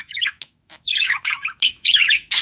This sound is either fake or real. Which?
fake